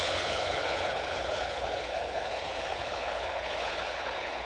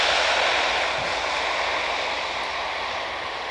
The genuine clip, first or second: second